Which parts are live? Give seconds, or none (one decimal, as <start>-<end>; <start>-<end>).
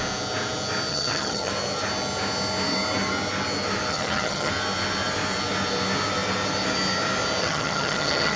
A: 0.0-0.9; 1.5-3.9; 4.5-7.4